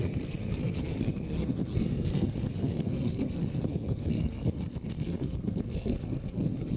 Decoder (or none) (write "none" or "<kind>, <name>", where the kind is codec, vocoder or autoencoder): codec, SNAC